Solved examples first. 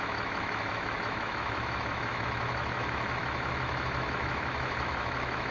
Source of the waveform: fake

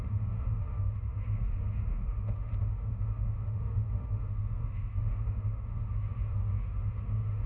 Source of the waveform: fake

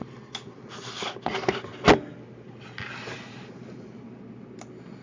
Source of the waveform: real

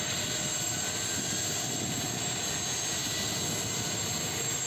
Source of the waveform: real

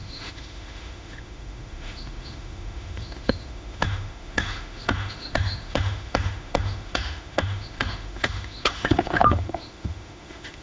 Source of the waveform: fake